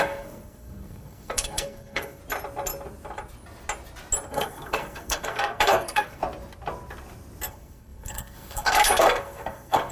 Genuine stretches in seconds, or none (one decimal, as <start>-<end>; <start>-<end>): 2.2-4.3; 6.2-7.5